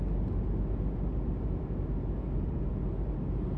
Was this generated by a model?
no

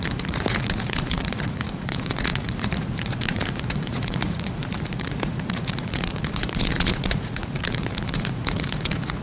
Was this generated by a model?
yes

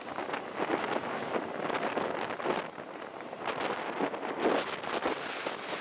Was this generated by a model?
no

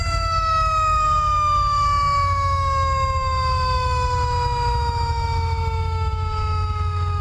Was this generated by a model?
yes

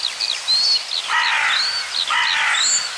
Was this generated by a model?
no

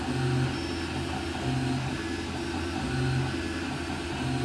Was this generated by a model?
no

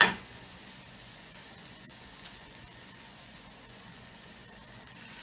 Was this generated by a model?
yes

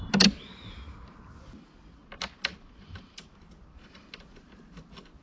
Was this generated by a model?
no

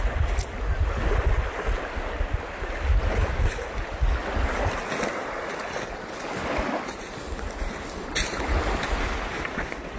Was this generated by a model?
no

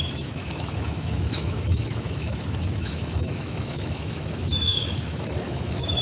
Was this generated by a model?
yes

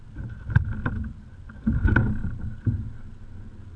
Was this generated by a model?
no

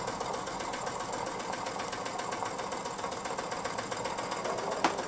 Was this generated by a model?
no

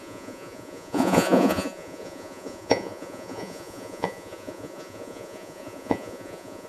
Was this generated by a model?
yes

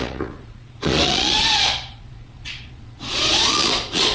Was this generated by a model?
yes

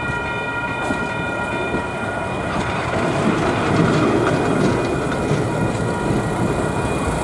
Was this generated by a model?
no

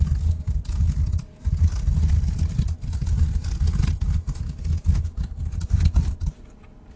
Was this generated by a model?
no